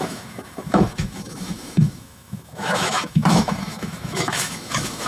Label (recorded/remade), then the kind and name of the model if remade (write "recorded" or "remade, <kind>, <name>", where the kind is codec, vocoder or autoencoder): remade, autoencoder, DAC-VAE